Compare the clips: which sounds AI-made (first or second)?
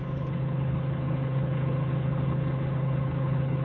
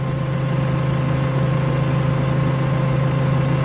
first